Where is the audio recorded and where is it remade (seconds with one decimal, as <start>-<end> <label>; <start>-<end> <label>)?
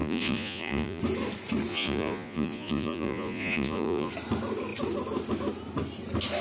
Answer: 0.0-1.0 remade; 1.0-1.7 recorded; 1.7-4.1 remade; 4.1-6.4 recorded